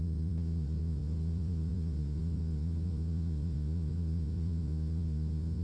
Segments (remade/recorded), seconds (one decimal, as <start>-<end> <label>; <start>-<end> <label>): 0.0-5.6 remade